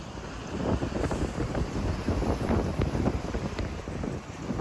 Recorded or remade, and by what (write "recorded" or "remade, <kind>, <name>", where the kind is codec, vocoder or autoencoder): remade, vocoder, BigVGAN v2